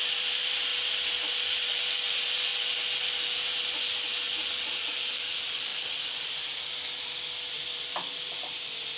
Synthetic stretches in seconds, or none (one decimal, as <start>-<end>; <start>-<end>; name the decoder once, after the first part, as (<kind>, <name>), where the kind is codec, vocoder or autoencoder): 0.0-0.7 (vocoder, BigVGAN v2); 1.3-2.5; 5.1-5.7; 7.0-9.0